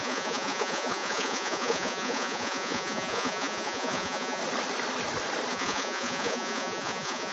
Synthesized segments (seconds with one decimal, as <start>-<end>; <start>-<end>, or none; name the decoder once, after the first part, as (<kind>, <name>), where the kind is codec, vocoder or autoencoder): 0.0-4.4 (vocoder, Vocos); 5.5-7.3